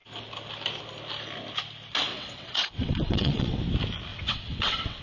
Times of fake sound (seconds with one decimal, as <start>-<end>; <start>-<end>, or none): 2.1-3.6; 4.1-5.0